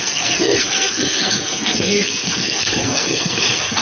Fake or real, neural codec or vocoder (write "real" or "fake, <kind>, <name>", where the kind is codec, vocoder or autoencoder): fake, codec, SNAC